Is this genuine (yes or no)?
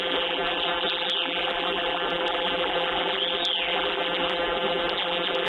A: no